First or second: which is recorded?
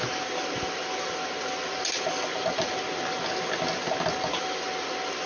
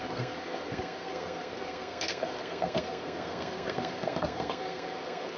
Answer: first